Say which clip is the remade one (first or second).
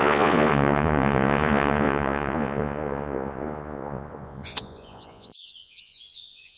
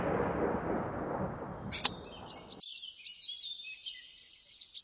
first